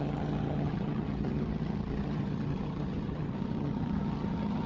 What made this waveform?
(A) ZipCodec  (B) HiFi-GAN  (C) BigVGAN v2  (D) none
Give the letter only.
B